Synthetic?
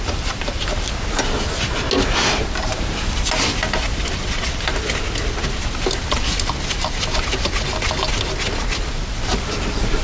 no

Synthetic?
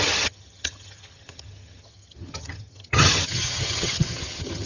yes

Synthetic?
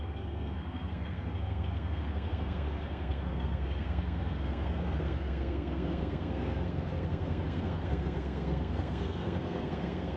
yes